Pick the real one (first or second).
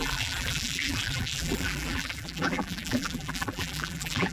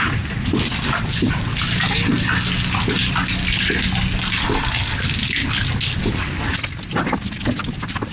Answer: second